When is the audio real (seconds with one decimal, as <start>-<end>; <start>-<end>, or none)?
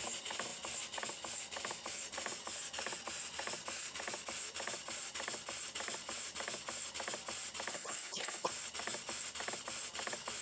0.0-7.7; 8.5-10.4